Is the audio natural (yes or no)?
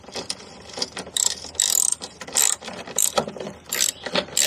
yes